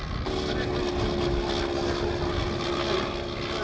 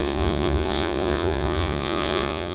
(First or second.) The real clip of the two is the first